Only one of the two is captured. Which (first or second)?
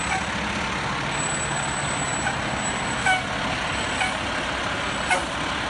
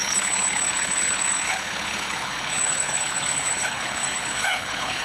first